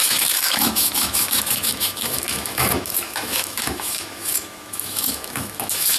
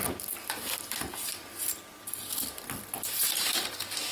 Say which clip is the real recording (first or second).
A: second